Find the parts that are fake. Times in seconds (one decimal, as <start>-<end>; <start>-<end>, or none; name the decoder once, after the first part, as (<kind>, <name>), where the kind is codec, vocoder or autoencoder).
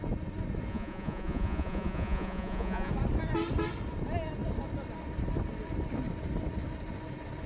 0.7-2.9 (vocoder, Vocos)